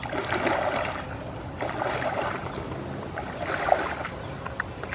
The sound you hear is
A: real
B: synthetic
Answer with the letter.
A